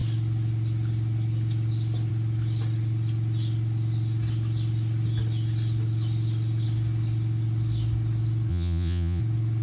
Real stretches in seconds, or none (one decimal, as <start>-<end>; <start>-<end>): 0.0-8.5; 9.2-9.6